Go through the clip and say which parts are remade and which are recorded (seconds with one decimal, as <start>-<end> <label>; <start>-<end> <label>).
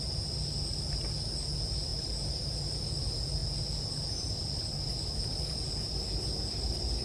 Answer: 0.0-7.0 recorded